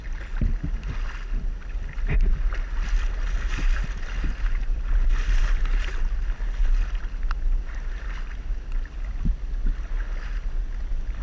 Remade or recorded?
recorded